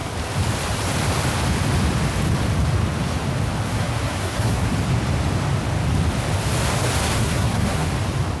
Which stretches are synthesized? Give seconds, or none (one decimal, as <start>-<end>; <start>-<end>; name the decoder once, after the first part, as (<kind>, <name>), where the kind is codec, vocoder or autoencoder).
3.7-4.7 (codec, SNAC); 7.0-7.9